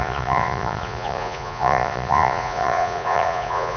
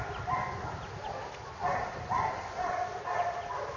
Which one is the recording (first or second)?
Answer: second